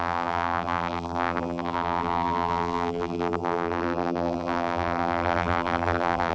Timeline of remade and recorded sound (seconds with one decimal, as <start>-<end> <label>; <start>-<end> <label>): 0.0-6.3 remade